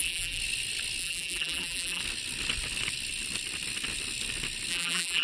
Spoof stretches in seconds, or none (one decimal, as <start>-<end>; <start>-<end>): 0.0-0.4; 1.0-2.0; 4.7-5.2